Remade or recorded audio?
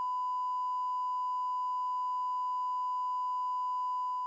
recorded